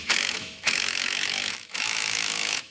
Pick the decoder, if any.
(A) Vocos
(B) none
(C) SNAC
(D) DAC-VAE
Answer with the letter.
D